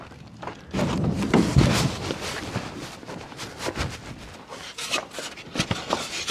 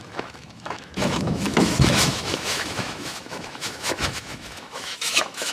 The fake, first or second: second